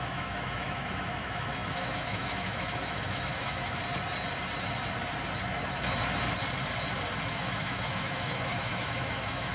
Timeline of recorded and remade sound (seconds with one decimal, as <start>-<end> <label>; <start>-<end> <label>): 0.0-3.8 remade; 3.8-7.2 recorded; 7.2-9.5 remade